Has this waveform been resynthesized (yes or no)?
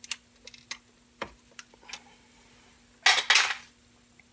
no